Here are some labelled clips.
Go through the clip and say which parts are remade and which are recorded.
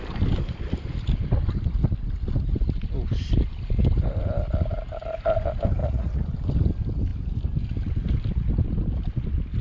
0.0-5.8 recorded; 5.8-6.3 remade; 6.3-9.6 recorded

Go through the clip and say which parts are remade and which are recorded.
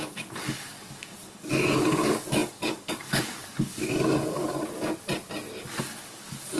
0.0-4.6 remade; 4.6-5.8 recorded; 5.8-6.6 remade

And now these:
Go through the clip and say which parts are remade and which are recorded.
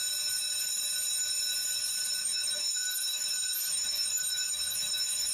0.0-2.2 recorded; 2.2-5.3 remade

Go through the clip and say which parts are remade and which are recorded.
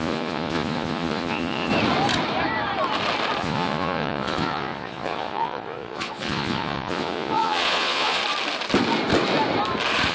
0.0-1.7 remade; 1.7-3.4 recorded; 3.4-8.2 remade; 8.2-10.1 recorded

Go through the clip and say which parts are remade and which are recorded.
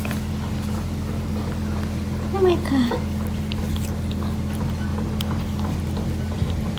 0.0-6.8 recorded